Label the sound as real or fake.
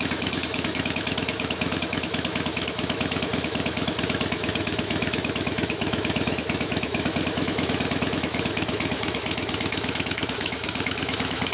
fake